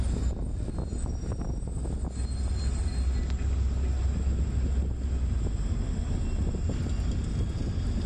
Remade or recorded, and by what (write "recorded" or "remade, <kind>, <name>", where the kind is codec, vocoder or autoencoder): recorded